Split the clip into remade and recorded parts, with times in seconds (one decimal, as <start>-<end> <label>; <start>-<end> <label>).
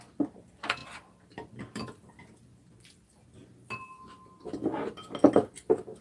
0.0-6.0 recorded